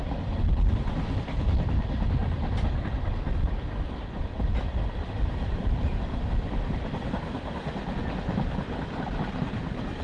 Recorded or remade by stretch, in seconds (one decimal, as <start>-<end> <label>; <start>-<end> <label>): 0.0-2.2 remade; 2.2-2.9 recorded; 2.9-4.3 remade; 4.3-5.4 recorded; 5.4-10.0 remade